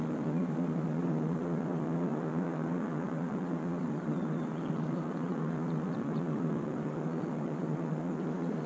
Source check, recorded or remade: remade